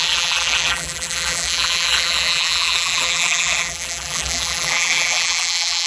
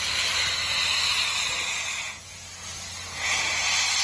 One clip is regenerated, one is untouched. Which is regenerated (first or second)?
first